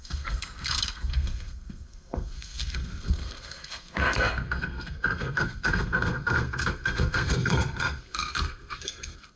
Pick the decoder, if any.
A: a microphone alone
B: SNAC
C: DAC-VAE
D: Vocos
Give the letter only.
B